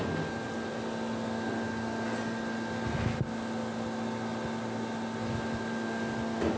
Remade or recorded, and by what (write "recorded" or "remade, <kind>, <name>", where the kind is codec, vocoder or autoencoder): recorded